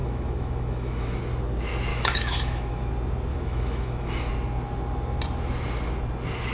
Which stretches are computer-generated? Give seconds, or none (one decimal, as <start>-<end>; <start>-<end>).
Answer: 0.0-1.2; 1.9-2.9; 3.3-4.3